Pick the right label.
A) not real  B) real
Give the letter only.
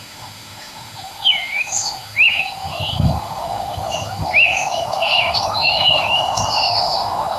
A